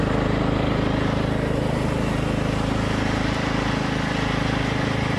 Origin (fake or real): real